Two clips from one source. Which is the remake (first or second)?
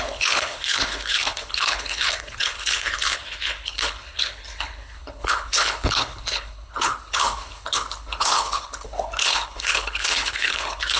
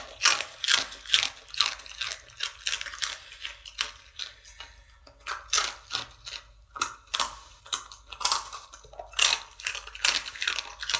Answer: first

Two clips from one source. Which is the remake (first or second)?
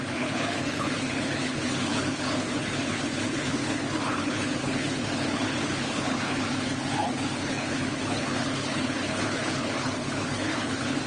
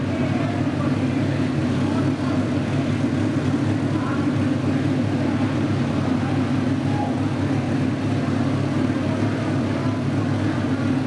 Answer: first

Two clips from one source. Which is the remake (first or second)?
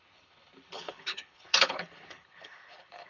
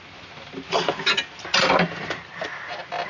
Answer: first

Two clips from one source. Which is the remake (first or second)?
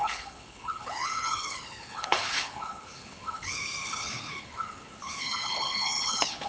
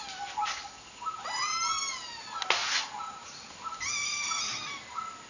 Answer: first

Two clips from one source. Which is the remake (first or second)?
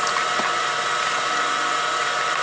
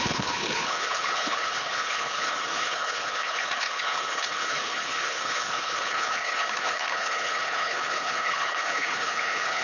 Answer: second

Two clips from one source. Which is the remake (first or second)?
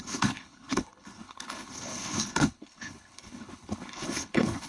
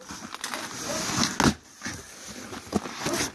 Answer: first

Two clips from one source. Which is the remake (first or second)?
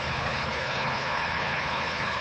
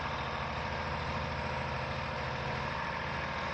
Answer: first